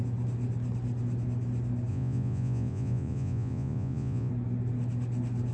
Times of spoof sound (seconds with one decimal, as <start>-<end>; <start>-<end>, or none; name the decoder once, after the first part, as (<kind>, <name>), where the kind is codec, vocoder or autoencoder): 1.9-4.3 (vocoder, Vocos)